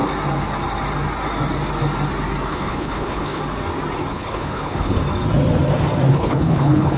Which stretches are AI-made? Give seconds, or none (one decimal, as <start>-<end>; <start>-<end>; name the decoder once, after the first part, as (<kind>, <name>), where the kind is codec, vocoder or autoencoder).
2.5-3.4 (codec, HILCodec); 4.1-5.0; 6.1-7.0